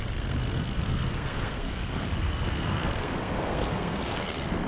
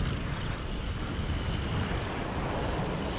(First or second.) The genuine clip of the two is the second